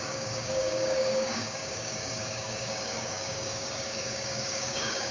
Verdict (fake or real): fake